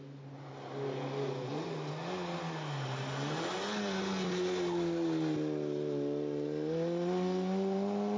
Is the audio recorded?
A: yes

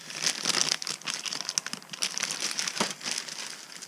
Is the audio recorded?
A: yes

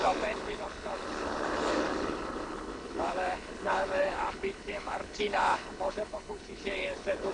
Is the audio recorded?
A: no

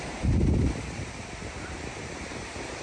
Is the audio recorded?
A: yes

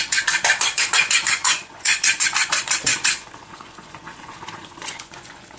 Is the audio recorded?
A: no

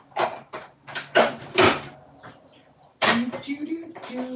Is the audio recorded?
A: yes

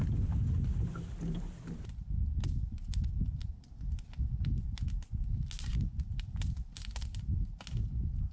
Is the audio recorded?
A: yes